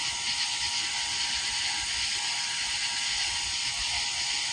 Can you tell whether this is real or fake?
real